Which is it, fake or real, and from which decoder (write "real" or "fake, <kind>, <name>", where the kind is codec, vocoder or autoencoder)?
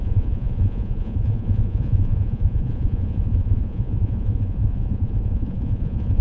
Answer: fake, vocoder, Vocos